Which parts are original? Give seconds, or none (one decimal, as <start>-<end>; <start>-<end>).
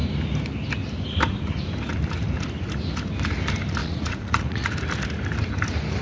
0.0-3.8; 4.7-6.0